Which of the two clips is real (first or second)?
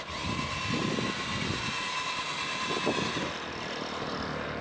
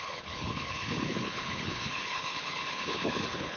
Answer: first